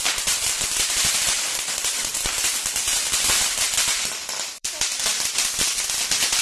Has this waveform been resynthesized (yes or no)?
yes